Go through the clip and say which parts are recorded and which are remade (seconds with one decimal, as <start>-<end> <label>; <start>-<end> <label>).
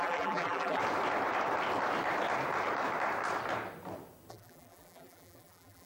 0.0-0.8 remade; 0.8-4.3 recorded; 4.3-5.9 remade